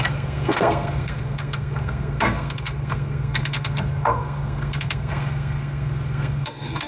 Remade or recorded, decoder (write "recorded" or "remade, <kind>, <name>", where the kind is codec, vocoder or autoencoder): remade, codec, SNAC